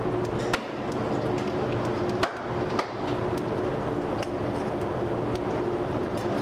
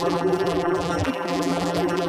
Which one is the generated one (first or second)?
second